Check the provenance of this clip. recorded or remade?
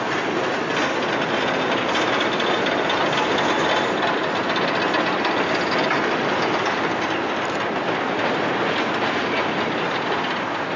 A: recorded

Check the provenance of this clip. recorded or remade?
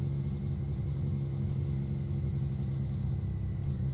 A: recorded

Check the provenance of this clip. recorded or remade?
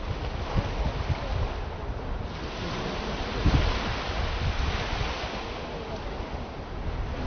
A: recorded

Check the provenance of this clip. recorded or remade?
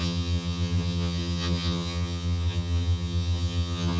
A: remade